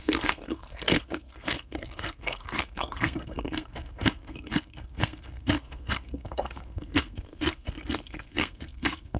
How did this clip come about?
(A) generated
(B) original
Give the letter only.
A